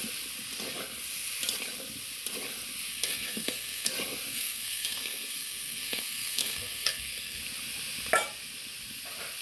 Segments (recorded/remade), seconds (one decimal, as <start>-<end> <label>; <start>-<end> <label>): 0.0-2.9 recorded; 2.9-3.9 remade; 3.9-4.3 recorded; 4.3-7.4 remade; 7.4-9.4 recorded